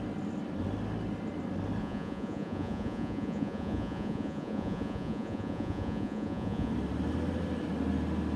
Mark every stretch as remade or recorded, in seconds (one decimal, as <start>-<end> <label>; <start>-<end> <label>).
0.0-1.8 recorded; 1.8-6.7 remade; 6.7-8.4 recorded